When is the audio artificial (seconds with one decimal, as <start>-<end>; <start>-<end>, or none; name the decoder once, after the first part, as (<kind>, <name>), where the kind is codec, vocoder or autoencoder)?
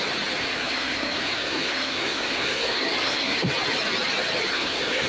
0.4-3.5 (codec, SNAC); 4.5-5.1